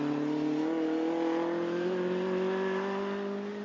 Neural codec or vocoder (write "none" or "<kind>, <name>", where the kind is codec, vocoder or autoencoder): none